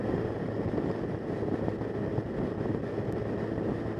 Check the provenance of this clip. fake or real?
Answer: real